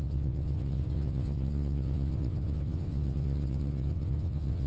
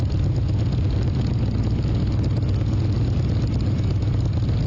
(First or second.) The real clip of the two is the second